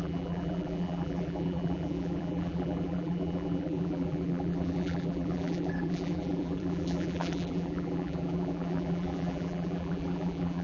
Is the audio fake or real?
fake